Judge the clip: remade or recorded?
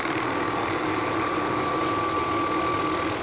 recorded